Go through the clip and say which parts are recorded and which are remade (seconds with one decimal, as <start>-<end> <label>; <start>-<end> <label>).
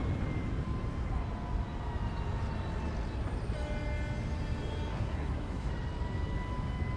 0.0-4.9 recorded; 4.9-5.7 remade; 5.7-7.0 recorded